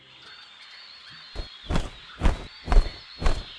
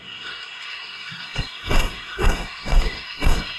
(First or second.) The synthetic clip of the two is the second